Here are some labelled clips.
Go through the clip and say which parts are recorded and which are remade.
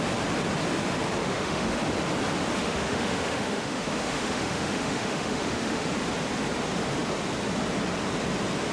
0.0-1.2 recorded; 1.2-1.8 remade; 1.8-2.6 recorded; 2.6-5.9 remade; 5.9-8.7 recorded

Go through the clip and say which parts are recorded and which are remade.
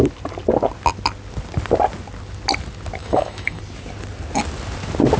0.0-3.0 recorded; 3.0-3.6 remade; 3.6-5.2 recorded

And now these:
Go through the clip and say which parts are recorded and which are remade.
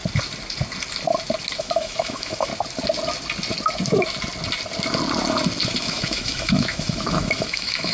0.0-1.6 recorded; 1.6-2.5 remade; 2.5-5.8 recorded; 5.8-7.9 remade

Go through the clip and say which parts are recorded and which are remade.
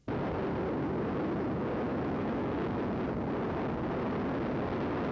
0.0-1.9 recorded; 1.9-2.9 remade; 2.9-5.1 recorded